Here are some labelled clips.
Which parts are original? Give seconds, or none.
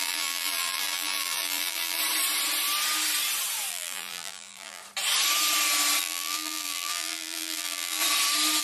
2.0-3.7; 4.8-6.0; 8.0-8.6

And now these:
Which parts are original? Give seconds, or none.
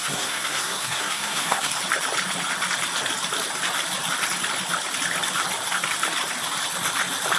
1.7-7.4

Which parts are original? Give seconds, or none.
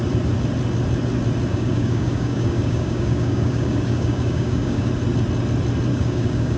0.0-1.5; 4.9-5.9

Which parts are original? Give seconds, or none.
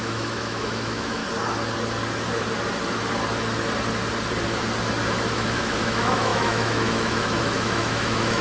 1.2-5.3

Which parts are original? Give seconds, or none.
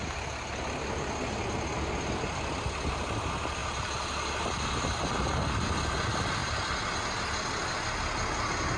0.0-8.8